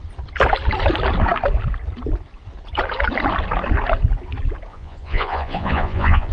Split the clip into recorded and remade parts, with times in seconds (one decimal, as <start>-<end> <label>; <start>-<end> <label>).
0.0-4.7 recorded; 4.7-6.3 remade